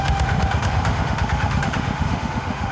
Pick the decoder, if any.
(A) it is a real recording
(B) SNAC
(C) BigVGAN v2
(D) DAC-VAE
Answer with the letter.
D